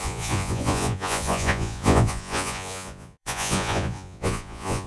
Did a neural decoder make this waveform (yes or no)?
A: yes